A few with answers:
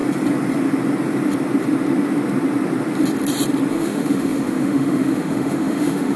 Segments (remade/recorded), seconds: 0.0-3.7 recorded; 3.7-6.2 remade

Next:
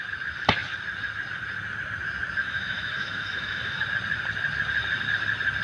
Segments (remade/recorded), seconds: 0.0-2.4 recorded; 2.4-3.8 remade; 3.8-5.6 recorded

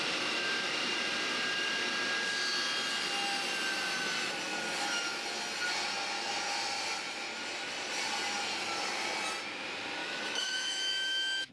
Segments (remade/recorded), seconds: 0.0-10.0 recorded; 10.0-11.5 remade